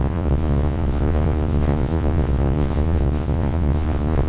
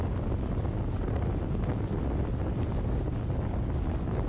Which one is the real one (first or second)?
second